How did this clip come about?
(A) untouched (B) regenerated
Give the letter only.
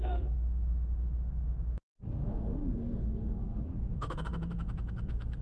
B